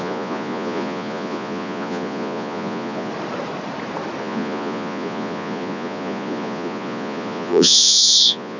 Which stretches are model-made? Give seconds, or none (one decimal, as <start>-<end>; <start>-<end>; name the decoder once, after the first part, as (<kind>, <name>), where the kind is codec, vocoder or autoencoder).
0.0-3.1 (vocoder, Vocos); 4.2-8.6